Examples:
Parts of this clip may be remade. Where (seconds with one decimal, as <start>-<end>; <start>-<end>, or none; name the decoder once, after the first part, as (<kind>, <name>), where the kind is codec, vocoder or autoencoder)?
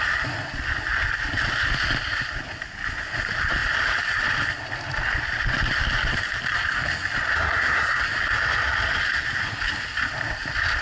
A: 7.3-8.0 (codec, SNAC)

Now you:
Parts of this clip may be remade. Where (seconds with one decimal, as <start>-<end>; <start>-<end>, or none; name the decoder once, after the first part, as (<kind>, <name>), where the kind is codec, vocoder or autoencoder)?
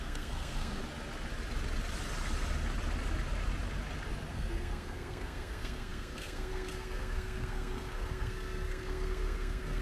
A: 0.0-0.8 (codec, SNAC); 4.3-9.8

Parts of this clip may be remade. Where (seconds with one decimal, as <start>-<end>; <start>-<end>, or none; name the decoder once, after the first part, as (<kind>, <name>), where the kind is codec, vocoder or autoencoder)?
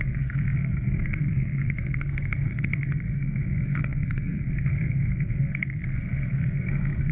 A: 0.0-7.1 (codec, SNAC)